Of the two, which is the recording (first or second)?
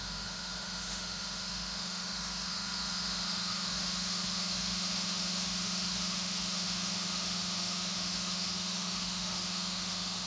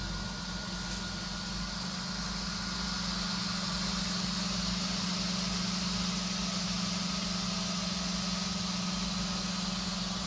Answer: second